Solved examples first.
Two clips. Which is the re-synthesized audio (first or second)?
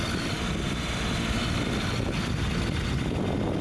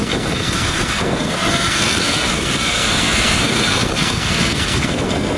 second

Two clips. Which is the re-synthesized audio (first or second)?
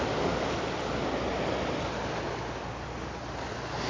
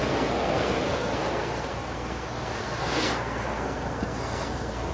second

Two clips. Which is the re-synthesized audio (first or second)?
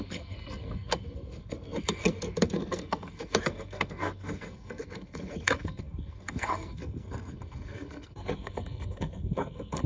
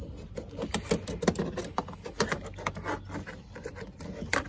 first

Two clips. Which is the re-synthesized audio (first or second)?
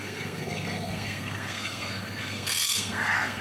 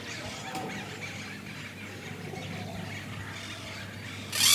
first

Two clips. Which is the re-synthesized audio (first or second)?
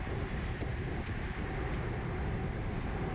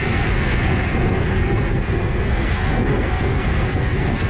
second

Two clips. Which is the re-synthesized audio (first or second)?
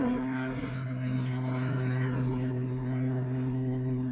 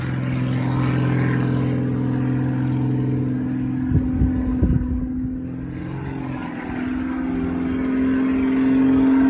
first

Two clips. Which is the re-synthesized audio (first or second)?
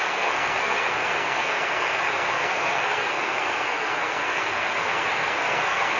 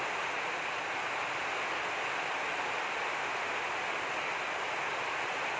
first